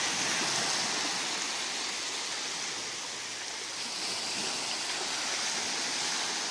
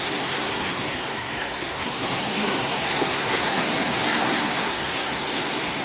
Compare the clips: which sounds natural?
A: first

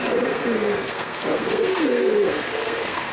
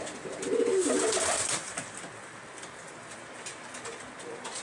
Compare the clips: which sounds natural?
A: second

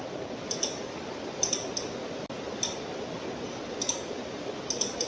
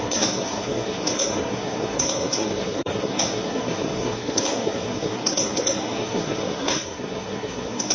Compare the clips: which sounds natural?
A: first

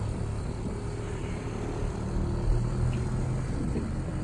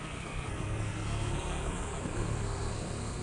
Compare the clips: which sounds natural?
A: first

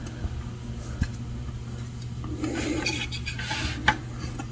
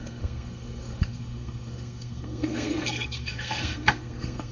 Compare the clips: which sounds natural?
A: first